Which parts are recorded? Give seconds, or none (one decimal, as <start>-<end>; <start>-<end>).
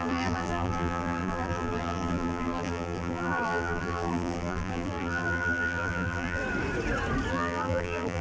6.4-7.3